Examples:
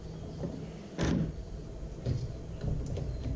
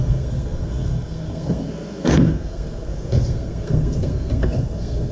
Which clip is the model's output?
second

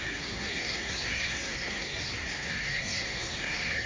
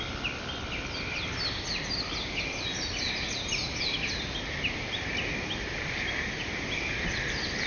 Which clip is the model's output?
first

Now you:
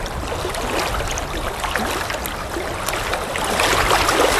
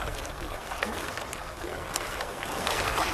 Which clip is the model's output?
second